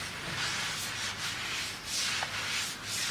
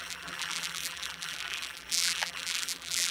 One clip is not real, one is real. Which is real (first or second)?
first